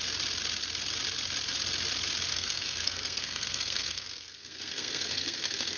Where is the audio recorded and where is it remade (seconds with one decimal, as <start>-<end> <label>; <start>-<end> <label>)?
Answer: 0.0-2.3 recorded; 2.3-5.8 remade